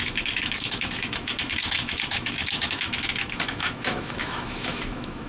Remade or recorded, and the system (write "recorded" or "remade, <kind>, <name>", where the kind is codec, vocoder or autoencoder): remade, autoencoder, DAC-VAE